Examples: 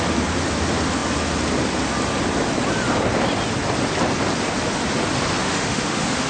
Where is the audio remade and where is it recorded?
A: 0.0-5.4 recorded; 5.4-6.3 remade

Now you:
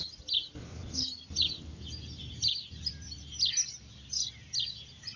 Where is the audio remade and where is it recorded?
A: 0.0-5.2 recorded

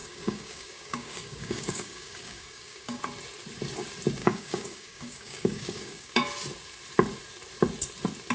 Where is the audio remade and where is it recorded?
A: 0.0-3.0 remade; 3.0-4.2 recorded; 4.2-6.1 remade; 6.1-8.3 recorded

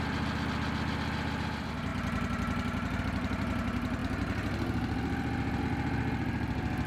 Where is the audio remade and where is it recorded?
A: 0.0-6.9 recorded

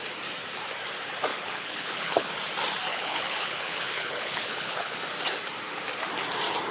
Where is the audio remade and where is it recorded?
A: 0.0-1.3 recorded; 1.3-2.3 remade; 2.3-2.9 recorded; 2.9-5.0 remade; 5.0-6.7 recorded